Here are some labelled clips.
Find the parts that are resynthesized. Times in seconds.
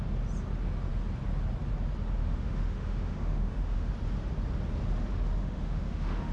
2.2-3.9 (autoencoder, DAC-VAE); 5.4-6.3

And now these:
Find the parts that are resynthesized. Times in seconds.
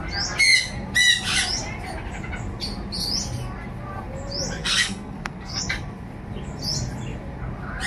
4.6-5.6 (codec, SNAC)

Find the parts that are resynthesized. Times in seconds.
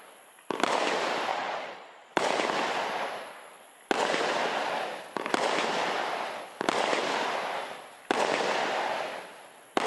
1.3-2.2 (vocoder, Vocos)